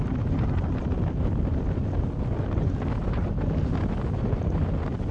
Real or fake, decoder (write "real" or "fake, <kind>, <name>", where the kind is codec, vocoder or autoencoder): real